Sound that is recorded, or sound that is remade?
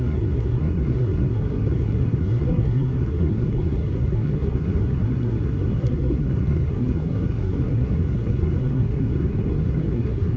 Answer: remade